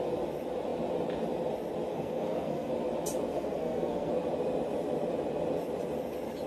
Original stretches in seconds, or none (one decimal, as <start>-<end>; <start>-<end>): 0.0-1.9; 2.7-3.3; 4.1-6.5